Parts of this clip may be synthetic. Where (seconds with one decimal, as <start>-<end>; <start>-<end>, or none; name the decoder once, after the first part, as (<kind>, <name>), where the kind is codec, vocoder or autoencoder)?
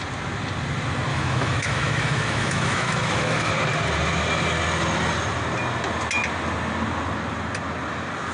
1.1-3.5 (autoencoder, DAC-VAE)